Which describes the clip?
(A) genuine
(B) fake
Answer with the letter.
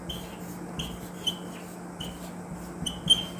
A